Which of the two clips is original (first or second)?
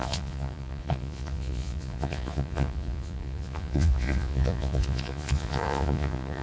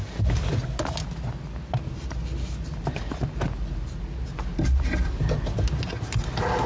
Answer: second